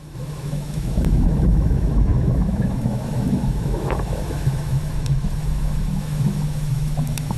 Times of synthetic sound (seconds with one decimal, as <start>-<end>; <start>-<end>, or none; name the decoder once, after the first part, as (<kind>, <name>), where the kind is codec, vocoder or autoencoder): 0.0-7.4 (autoencoder, DAC-VAE)